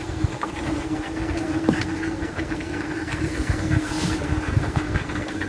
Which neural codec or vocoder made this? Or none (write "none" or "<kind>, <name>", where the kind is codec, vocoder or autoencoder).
codec, SNAC